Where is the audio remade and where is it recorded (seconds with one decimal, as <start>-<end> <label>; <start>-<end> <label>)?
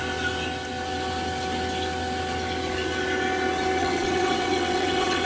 0.0-3.8 recorded; 3.8-5.3 remade